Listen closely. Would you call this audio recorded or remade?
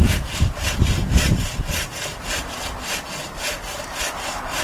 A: remade